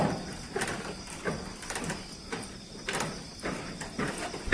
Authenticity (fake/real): real